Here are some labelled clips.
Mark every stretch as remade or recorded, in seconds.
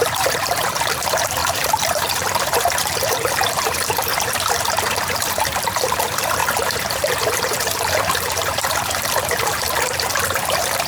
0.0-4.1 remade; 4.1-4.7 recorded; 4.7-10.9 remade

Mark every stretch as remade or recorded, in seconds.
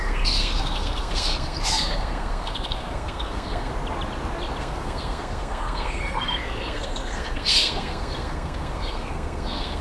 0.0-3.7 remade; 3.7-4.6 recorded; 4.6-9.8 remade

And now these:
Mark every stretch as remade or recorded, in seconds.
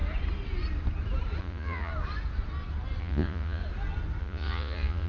0.0-1.4 recorded; 1.4-1.9 remade; 1.9-3.0 recorded; 3.0-3.6 remade; 3.6-4.2 recorded; 4.2-5.1 remade